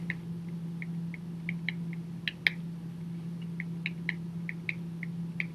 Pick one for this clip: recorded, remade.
recorded